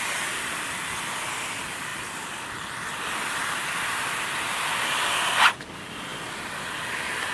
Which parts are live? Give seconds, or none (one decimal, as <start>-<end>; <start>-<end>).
0.0-1.9; 2.4-7.3